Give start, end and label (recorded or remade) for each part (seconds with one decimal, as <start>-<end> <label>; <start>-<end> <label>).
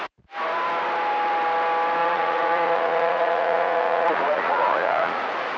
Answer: 0.0-2.0 recorded; 2.0-5.6 remade